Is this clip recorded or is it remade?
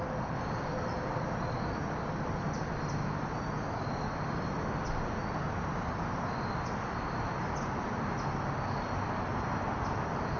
recorded